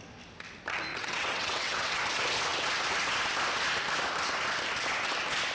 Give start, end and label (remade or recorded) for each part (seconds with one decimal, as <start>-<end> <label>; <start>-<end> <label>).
0.0-0.9 recorded; 0.9-2.0 remade; 2.0-5.5 recorded